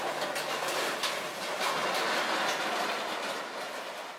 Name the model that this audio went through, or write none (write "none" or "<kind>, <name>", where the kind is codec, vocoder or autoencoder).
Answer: none